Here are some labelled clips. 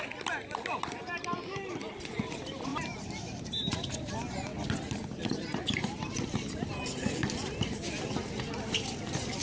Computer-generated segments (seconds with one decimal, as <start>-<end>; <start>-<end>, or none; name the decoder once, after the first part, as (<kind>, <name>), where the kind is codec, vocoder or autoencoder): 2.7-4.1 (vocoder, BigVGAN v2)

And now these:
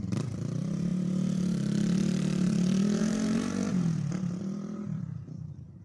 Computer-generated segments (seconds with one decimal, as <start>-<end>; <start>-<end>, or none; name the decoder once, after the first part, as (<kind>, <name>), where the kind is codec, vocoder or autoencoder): 0.0-5.8 (vocoder, BigVGAN v2)

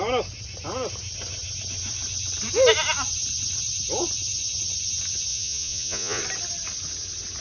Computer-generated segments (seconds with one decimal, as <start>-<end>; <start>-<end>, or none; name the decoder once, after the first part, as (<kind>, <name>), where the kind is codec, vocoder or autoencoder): 5.3-6.2 (vocoder, Vocos)